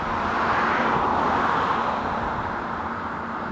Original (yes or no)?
yes